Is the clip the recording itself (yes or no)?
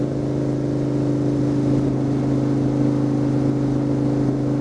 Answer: yes